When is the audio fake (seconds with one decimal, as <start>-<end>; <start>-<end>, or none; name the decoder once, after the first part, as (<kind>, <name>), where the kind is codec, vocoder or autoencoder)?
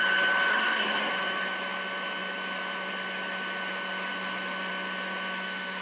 0.5-1.1 (codec, SNAC)